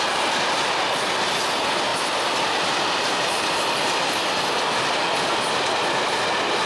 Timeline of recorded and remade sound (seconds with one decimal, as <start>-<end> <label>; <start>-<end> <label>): 0.0-1.9 recorded; 1.9-5.9 remade; 5.9-6.7 recorded